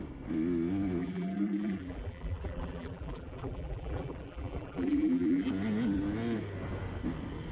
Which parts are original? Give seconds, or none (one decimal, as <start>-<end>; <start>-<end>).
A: 0.0-1.0; 5.5-7.5